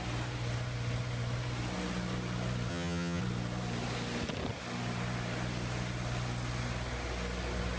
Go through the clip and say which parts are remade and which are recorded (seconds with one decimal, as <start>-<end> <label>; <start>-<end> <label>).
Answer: 0.0-2.7 recorded; 2.7-3.2 remade; 3.2-7.8 recorded